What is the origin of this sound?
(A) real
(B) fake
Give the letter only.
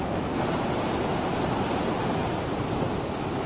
A